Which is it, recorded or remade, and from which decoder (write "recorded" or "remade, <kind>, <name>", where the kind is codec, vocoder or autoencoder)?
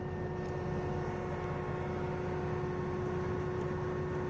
recorded